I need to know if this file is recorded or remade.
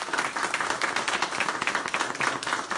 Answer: recorded